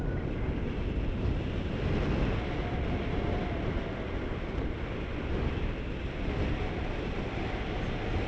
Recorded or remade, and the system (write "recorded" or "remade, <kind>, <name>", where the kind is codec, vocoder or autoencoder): recorded